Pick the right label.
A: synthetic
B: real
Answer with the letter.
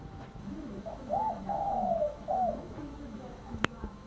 A